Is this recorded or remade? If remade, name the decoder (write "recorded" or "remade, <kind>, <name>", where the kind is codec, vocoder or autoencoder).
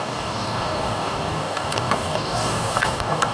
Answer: remade, codec, DAC